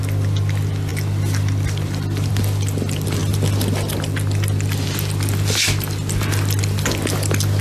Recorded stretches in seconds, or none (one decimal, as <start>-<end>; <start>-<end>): 0.0-7.6